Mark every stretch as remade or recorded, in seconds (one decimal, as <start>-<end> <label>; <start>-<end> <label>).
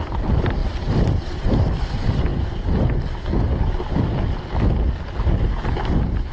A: 0.0-0.6 recorded; 0.6-1.5 remade; 1.5-6.3 recorded